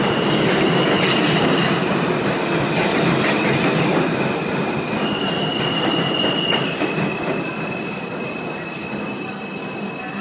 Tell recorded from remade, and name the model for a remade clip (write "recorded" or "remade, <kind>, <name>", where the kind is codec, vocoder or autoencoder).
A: recorded